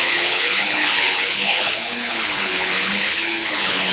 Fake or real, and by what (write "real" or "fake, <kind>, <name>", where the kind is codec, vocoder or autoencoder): fake, codec, HILCodec